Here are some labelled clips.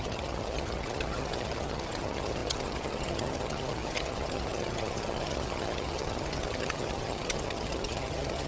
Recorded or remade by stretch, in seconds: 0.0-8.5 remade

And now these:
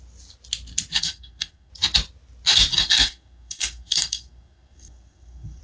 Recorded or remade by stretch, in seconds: 0.0-1.0 recorded; 1.0-1.7 remade; 1.7-2.7 recorded; 2.7-5.6 remade

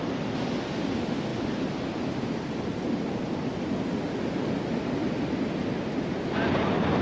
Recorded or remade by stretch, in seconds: 0.0-7.0 recorded

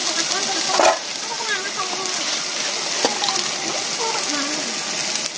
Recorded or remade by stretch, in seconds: 0.0-5.4 recorded

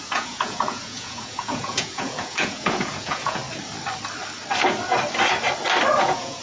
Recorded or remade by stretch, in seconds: 0.0-3.4 remade; 3.4-6.0 recorded; 6.0-6.4 remade

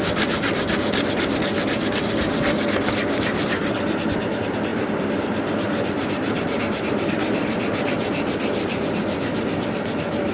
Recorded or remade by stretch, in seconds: 0.0-4.7 recorded; 4.7-6.6 remade; 6.6-10.3 recorded